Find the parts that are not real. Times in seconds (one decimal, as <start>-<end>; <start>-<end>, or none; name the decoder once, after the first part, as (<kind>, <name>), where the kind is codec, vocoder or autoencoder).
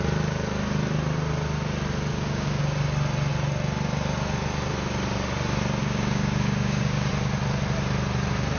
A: 2.1-2.6 (codec, DAC); 5.8-7.1